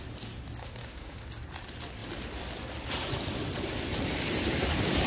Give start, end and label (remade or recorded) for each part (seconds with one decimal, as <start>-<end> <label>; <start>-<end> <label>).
0.0-0.6 recorded; 0.6-1.3 remade; 1.3-5.1 recorded